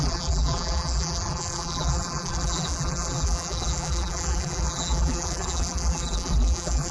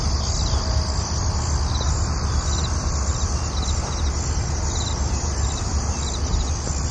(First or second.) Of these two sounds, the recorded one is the second